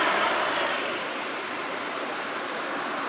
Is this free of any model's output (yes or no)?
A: no